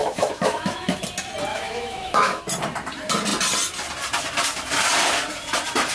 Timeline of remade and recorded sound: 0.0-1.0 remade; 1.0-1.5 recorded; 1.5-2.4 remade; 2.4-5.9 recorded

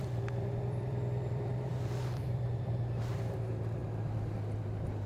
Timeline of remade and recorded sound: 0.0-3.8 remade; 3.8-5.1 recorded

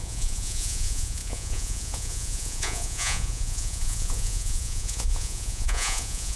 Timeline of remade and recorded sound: 0.0-6.4 remade

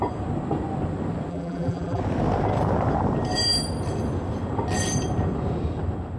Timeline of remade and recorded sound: 0.0-1.3 recorded; 1.3-2.0 remade; 2.0-6.2 recorded